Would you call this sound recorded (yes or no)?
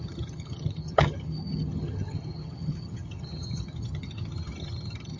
no